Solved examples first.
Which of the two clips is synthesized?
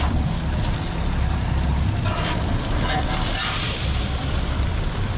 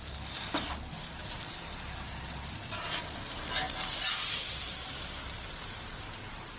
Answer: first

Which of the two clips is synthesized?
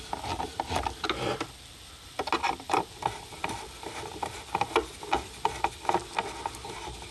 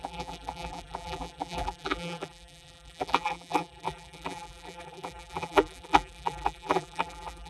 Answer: second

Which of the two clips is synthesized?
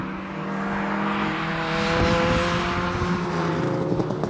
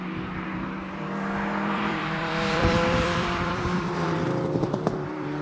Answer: second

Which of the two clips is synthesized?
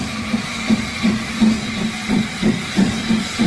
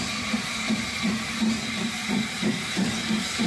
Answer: second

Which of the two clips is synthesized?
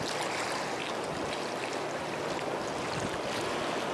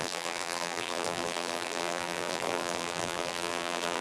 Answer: second